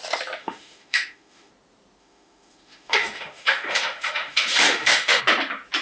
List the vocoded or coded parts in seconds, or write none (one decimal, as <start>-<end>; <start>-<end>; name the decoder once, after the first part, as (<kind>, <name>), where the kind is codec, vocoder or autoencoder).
0.4-1.5 (autoencoder, DAC-VAE); 2.0-5.2